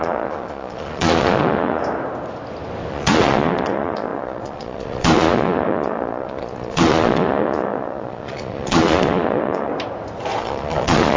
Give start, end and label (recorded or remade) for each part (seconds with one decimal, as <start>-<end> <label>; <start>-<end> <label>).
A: 0.0-1.8 remade; 1.8-2.9 recorded; 2.9-9.7 remade; 9.7-10.4 recorded; 10.4-11.2 remade

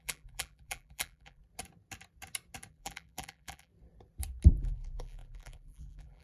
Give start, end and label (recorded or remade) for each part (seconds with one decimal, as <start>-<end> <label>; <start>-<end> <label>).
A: 0.0-1.4 remade; 1.4-2.7 recorded; 2.7-3.7 remade; 3.7-4.5 recorded; 4.5-6.2 remade

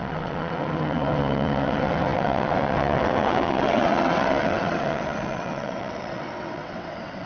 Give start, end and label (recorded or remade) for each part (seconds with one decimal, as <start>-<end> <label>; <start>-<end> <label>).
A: 0.0-7.3 remade

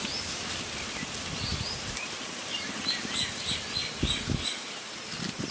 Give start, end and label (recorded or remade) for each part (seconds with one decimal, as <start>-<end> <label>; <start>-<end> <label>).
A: 0.0-5.5 recorded

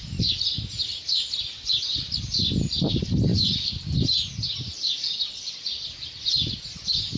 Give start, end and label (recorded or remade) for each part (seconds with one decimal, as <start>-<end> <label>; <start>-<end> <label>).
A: 0.0-7.2 recorded

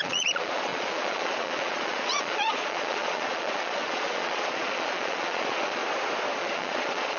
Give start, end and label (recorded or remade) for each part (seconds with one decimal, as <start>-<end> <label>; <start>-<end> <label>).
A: 0.0-5.8 remade; 5.8-6.4 recorded; 6.4-7.2 remade